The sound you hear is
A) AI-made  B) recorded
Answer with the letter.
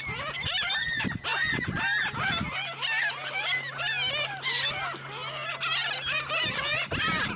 B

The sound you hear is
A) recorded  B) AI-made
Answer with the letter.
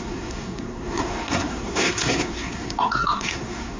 B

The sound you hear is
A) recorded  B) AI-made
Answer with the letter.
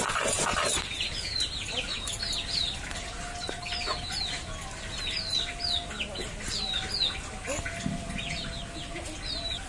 A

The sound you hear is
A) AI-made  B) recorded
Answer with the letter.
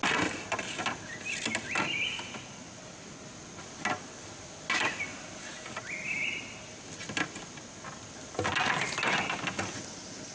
B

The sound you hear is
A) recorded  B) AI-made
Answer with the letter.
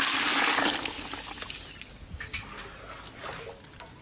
A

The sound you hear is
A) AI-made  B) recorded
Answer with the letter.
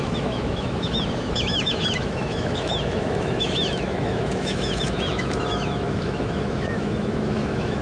A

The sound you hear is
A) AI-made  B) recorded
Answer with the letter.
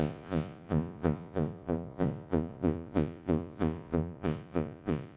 A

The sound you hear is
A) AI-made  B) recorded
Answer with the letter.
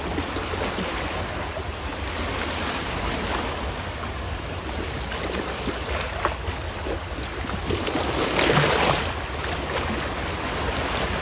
B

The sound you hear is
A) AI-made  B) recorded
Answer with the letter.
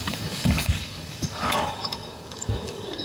A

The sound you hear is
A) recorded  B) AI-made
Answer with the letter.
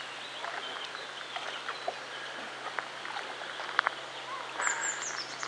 A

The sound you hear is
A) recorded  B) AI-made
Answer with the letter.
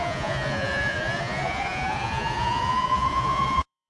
B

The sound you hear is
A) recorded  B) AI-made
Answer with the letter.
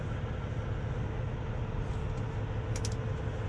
A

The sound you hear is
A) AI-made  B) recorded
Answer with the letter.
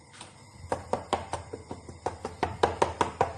B